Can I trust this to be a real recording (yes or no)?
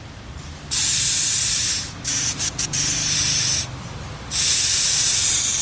yes